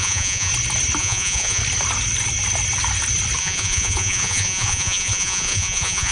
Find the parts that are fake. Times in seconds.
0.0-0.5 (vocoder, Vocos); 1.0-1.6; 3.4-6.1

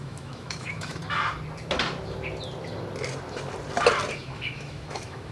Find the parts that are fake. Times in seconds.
0.0-1.0 (autoencoder, DAC-VAE); 4.2-5.3

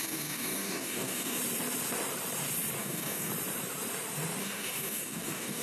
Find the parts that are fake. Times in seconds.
0.0-1.4 (codec, DAC); 2.8-3.3; 4.4-5.6

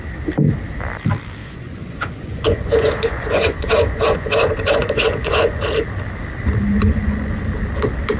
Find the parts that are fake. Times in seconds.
1.4-5.6 (vocoder, Vocos); 6.7-7.4